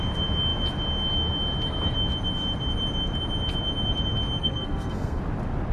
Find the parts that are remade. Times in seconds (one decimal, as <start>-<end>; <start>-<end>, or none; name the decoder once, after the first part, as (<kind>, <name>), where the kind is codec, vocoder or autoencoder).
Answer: 4.4-5.2 (codec, SNAC)